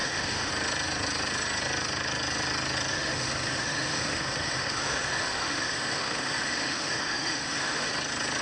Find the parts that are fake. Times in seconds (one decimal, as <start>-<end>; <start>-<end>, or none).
0.0-0.5; 2.9-7.9